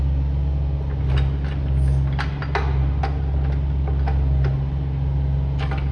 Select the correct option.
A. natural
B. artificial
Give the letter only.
A